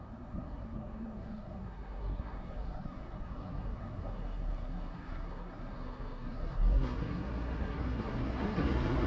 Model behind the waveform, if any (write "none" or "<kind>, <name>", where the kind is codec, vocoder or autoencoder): codec, SNAC